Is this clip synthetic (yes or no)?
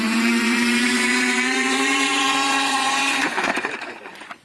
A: yes